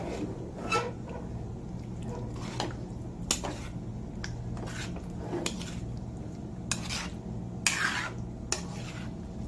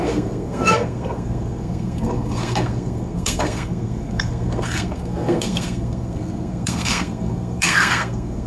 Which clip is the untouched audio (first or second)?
first